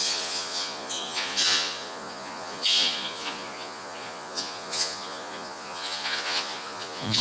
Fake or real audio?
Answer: fake